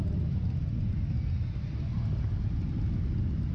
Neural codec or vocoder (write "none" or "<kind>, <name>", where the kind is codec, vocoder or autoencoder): none